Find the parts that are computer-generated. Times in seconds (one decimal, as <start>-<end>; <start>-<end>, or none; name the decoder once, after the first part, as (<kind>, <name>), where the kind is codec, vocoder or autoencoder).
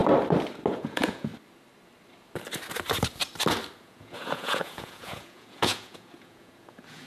0.7-1.3 (vocoder, Vocos); 3.8-7.1